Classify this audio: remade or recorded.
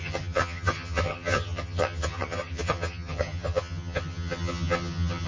remade